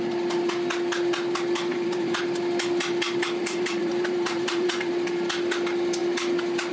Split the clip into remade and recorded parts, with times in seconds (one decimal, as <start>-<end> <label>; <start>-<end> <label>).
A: 0.0-1.7 recorded; 1.7-2.2 remade; 2.2-3.4 recorded; 3.4-4.9 remade; 4.9-6.7 recorded